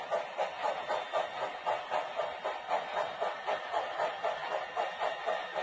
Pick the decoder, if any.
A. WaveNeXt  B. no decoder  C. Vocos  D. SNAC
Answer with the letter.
B